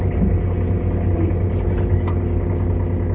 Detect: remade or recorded recorded